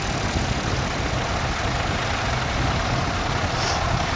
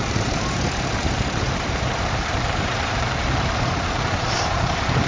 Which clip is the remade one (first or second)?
second